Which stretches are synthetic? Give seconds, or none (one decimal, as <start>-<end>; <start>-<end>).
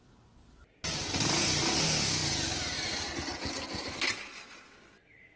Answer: none